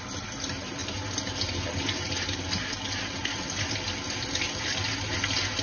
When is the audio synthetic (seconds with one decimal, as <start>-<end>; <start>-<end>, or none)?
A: none